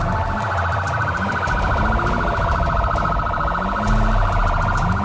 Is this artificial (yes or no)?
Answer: no